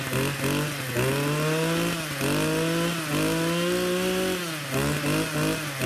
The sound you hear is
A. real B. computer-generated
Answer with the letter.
A